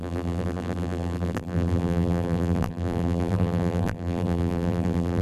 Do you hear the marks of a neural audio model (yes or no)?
yes